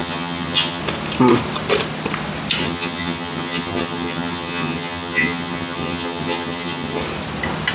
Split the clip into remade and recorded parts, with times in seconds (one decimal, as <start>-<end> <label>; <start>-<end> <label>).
0.0-0.8 remade; 0.8-2.6 recorded; 2.6-7.0 remade; 7.0-7.7 recorded